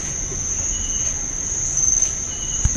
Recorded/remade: recorded